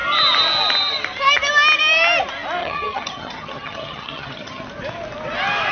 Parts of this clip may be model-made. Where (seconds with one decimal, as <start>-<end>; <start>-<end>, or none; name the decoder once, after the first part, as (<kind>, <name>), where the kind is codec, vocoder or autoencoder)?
2.6-4.6 (vocoder, HiFi-GAN)